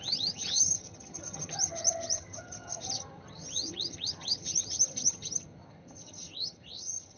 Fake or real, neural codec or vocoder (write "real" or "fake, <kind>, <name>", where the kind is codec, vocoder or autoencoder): fake, vocoder, HiFi-GAN